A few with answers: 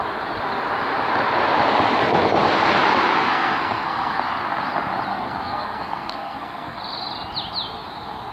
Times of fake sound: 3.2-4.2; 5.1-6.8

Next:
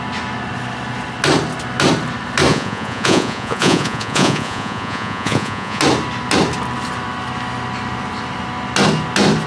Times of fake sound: 2.5-5.8

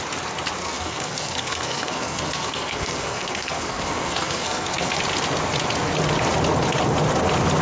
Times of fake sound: 0.6-5.0